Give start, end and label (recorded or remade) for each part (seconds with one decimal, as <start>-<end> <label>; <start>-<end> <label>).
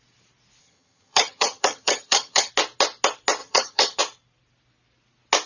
0.0-0.6 recorded; 0.6-2.5 remade; 2.5-3.4 recorded; 3.4-4.0 remade; 4.0-5.5 recorded